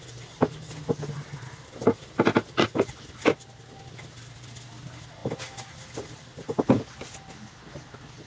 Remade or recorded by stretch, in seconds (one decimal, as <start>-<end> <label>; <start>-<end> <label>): 0.0-8.3 recorded